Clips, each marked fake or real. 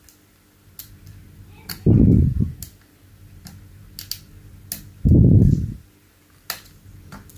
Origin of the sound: real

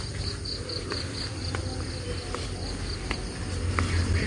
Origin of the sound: real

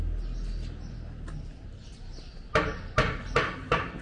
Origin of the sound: real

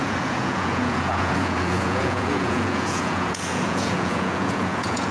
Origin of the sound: fake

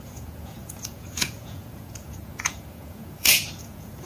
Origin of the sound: fake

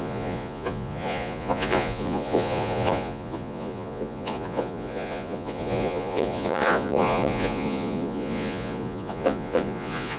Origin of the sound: fake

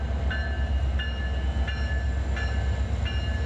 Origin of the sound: real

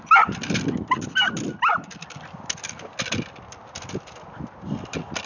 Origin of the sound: real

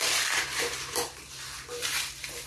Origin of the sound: fake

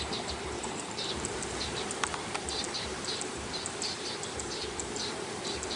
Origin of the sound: fake